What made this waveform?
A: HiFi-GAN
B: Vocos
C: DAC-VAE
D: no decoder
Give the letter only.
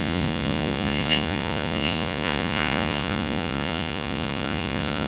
B